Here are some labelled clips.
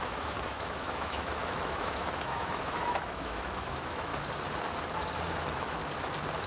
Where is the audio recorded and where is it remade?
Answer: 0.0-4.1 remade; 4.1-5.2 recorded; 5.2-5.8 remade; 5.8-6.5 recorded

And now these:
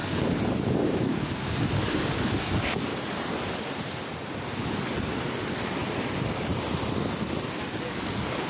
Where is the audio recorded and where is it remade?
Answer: 0.0-0.5 recorded; 0.5-2.9 remade; 2.9-7.8 recorded; 7.8-8.5 remade

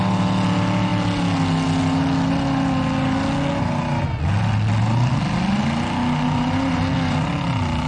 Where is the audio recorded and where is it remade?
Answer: 0.0-7.9 recorded